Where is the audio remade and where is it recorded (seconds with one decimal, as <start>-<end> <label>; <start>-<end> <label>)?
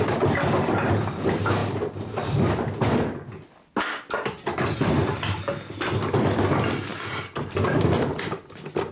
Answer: 0.0-8.9 recorded